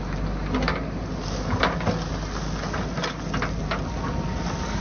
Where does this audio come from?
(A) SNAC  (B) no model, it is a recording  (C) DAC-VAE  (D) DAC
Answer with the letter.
B